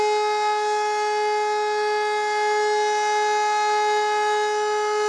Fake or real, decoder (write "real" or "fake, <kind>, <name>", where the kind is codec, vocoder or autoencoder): real